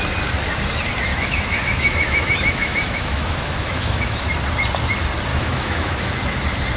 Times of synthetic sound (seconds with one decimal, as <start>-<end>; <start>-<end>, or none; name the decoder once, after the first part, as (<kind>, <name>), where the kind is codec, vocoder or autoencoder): 1.1-4.3 (autoencoder, DAC-VAE); 5.3-6.2